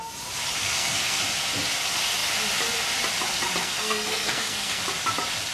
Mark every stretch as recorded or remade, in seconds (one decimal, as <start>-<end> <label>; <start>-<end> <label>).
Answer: 0.0-0.6 recorded; 0.6-1.2 remade; 1.2-3.6 recorded; 3.6-4.8 remade; 4.8-5.5 recorded